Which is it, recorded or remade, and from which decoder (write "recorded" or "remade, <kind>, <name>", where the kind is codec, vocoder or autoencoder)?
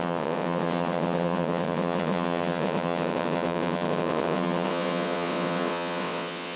remade, vocoder, WaveNeXt